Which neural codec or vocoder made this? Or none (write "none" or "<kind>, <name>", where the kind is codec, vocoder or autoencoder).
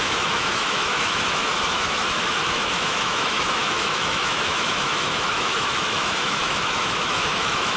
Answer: autoencoder, DAC-VAE